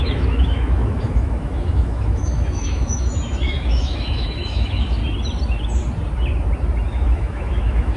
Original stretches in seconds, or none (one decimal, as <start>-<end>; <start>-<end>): 5.0-6.9